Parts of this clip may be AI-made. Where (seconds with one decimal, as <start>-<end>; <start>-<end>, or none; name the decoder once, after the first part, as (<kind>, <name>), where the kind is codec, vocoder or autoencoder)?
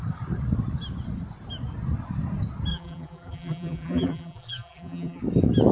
2.7-5.2 (vocoder, BigVGAN v2)